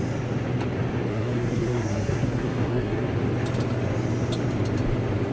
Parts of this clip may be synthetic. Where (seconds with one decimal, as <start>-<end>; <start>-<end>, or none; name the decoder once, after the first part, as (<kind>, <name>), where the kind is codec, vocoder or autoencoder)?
1.1-3.1 (codec, SNAC)